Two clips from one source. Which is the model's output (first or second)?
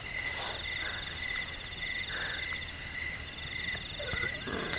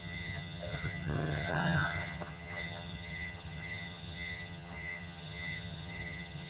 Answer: second